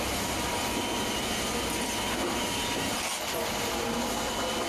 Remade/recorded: recorded